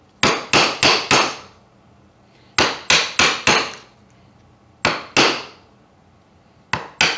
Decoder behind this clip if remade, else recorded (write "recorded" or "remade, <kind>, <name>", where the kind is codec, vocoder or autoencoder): recorded